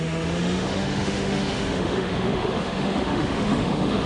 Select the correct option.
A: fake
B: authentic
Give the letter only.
A